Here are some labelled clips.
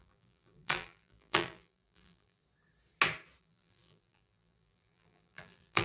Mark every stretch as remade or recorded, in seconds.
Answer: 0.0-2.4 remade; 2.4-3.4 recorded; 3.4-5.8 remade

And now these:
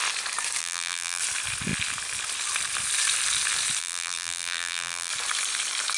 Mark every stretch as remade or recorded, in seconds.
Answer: 0.0-0.6 recorded; 0.6-1.2 remade; 1.2-3.8 recorded; 3.8-5.1 remade; 5.1-6.0 recorded